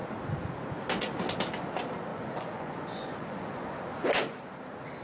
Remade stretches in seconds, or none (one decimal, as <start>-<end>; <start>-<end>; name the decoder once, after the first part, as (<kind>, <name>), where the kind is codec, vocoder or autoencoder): 2.1-3.8 (vocoder, Vocos)